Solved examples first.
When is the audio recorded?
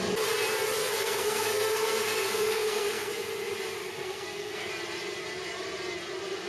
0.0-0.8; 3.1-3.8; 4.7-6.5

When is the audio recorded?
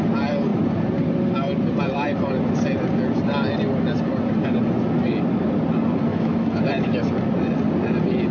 0.0-6.1; 6.6-8.3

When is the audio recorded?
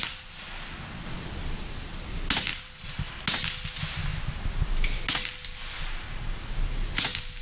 0.0-7.4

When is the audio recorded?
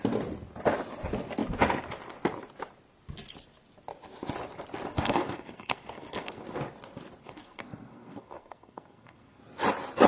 0.0-4.9; 6.4-7.2; 9.4-10.1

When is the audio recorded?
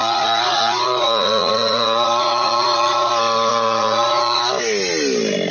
3.1-3.5; 4.4-5.5